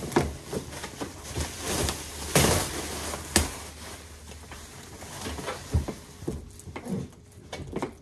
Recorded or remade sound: recorded